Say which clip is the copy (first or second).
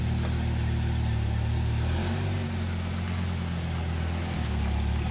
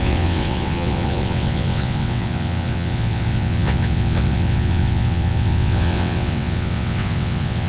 second